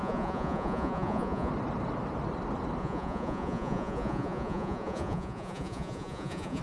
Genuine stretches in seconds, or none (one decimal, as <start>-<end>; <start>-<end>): 1.5-2.8